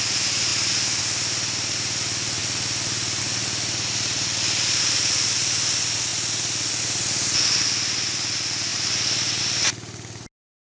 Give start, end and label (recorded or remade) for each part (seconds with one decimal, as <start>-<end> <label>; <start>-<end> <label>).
0.0-10.8 recorded